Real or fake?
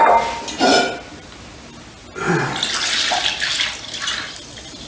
real